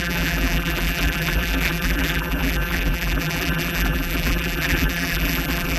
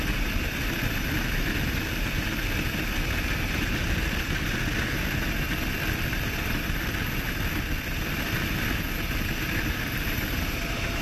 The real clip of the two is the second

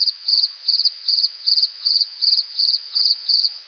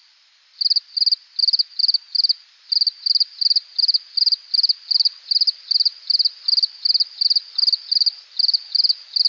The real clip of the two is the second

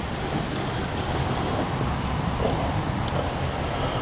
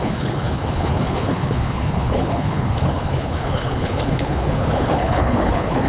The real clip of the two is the first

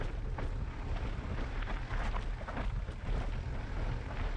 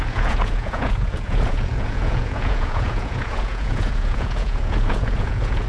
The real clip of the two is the first